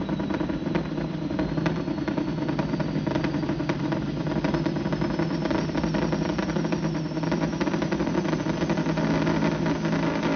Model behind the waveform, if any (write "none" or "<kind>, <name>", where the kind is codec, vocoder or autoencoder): none